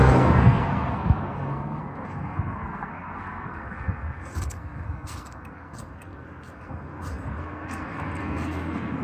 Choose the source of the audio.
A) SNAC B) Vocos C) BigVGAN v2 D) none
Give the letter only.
A